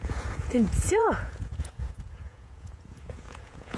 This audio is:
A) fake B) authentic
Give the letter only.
A